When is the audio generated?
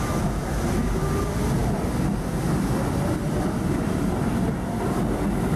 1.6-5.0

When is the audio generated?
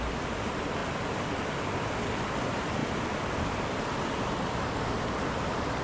none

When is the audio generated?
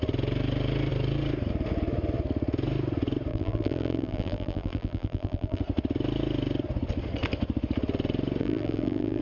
3.3-5.6; 8.4-9.2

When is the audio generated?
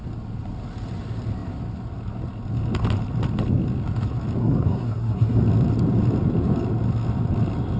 4.4-5.4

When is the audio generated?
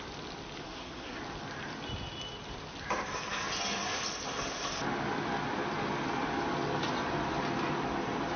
0.6-1.2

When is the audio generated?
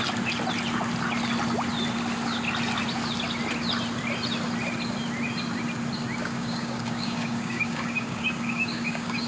6.2-9.3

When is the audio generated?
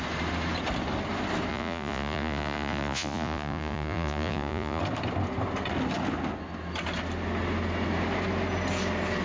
1.5-4.8